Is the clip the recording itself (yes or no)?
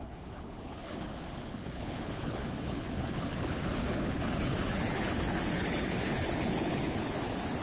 no